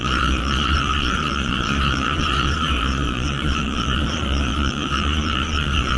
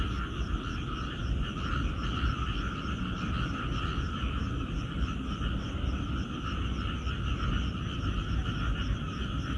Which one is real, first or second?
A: second